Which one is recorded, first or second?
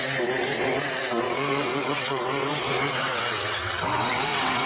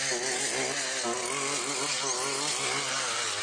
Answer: second